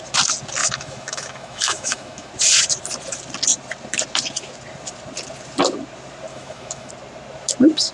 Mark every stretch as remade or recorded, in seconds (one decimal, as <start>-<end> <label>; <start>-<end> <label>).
0.0-0.6 recorded; 0.6-2.3 remade; 2.3-6.3 recorded; 6.3-6.9 remade; 6.9-7.9 recorded